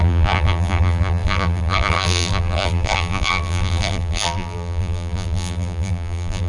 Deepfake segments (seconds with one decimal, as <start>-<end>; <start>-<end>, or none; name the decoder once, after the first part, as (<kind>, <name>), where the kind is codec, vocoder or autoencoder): 0.0-6.5 (vocoder, BigVGAN v2)

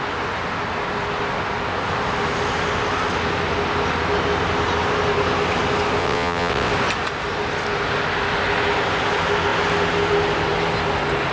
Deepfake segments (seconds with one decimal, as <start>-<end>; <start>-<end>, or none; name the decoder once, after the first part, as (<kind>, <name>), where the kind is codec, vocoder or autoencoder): 6.0-6.7 (vocoder, WaveNeXt)